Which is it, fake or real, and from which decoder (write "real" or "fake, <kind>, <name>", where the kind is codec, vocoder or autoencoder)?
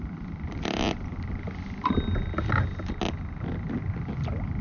real